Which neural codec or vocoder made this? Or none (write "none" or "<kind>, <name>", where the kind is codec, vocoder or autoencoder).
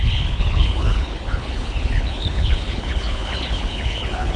codec, HILCodec